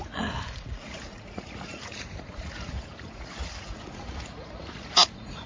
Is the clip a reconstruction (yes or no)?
yes